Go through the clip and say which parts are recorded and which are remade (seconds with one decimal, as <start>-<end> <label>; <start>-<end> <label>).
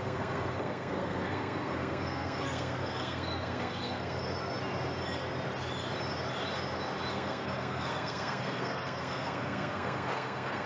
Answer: 0.0-4.2 remade; 4.2-7.1 recorded; 7.1-10.7 remade